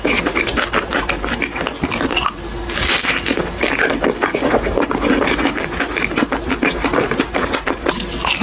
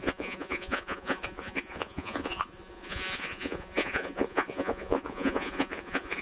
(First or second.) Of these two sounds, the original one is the first